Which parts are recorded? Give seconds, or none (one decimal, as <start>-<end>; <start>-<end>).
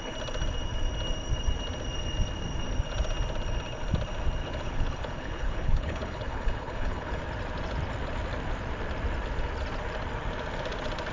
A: 0.0-4.4; 7.2-11.1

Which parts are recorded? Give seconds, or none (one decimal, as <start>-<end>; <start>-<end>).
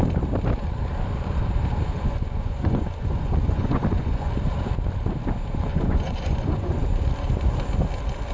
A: 0.0-1.9; 4.3-5.7; 6.7-8.3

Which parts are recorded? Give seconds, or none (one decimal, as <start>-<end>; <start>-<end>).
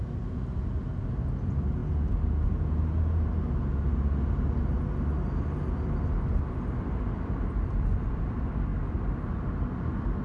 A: 0.0-10.2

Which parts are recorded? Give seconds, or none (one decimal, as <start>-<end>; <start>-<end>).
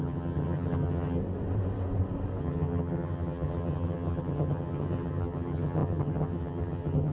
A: 1.2-2.4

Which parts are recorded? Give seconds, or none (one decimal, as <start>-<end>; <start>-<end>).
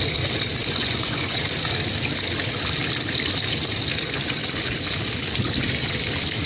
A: 0.0-0.6; 1.4-6.5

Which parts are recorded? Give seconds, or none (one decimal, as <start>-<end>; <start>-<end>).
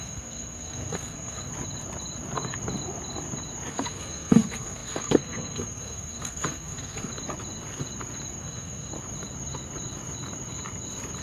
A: 1.5-3.7; 7.1-8.4; 8.9-11.2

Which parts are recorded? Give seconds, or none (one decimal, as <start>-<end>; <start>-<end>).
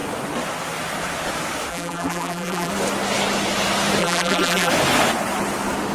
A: 0.0-1.7; 2.7-4.0; 4.7-5.9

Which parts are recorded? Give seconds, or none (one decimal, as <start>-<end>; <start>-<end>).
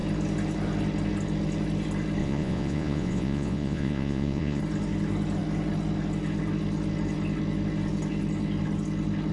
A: 0.0-2.2; 4.6-9.3